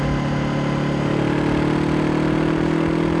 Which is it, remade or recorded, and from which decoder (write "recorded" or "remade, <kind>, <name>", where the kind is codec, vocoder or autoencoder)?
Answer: recorded